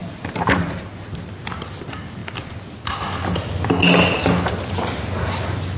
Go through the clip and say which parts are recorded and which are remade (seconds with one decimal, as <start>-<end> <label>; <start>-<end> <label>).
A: 0.0-1.2 remade; 1.2-5.8 recorded